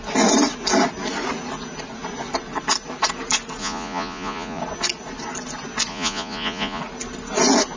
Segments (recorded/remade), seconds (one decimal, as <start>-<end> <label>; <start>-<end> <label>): 0.0-3.6 recorded; 3.6-4.6 remade; 4.6-5.9 recorded; 5.9-6.8 remade; 6.8-7.8 recorded